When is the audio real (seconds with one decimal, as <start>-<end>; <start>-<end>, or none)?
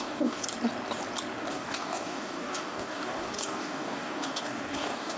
0.4-1.5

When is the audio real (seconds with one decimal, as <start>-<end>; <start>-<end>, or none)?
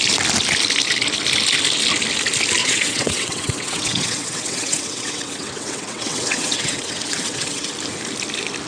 0.0-2.6; 7.7-8.7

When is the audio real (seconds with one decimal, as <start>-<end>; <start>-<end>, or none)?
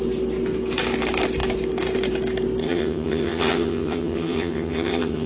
0.0-2.6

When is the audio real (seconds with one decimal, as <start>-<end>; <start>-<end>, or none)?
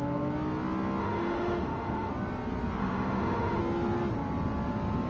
0.0-1.0; 2.1-2.8; 3.6-5.1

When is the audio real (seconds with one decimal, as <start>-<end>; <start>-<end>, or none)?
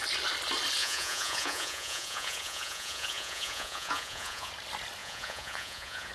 0.0-0.8; 4.5-5.0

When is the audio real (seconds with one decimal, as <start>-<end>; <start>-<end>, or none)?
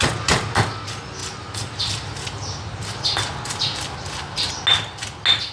0.0-5.5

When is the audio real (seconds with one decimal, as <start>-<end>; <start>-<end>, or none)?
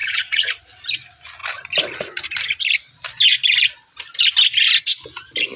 0.8-5.6